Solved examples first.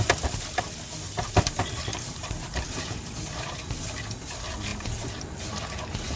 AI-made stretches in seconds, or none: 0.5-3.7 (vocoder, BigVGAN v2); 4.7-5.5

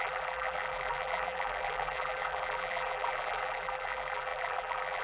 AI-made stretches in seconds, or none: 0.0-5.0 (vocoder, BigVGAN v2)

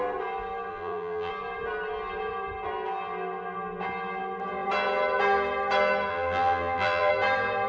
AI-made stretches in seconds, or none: 0.7-1.3 (vocoder, BigVGAN v2); 6.1-7.1

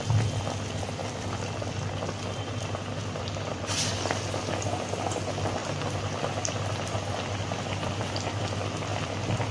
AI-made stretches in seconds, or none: 1.0-1.7 (vocoder, BigVGAN v2); 3.0-3.9; 8.9-9.5